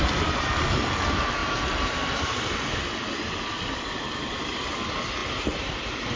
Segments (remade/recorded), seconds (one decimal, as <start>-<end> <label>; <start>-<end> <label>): 0.0-6.2 recorded